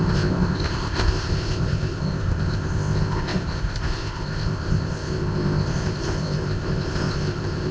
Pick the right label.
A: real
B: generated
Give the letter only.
B